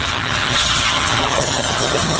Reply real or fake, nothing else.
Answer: fake